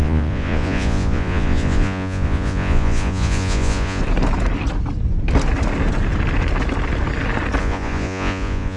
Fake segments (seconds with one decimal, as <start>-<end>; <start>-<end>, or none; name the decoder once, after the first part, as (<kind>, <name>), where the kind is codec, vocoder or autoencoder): 0.0-4.0 (vocoder, Vocos); 7.6-8.8